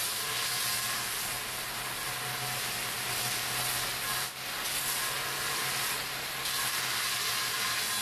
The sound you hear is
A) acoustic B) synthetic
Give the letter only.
A